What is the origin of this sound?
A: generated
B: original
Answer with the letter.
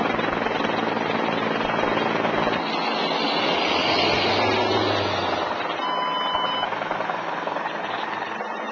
B